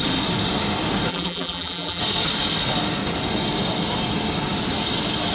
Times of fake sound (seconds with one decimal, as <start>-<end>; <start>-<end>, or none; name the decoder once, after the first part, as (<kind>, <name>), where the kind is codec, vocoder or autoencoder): 1.1-2.0 (vocoder, BigVGAN v2)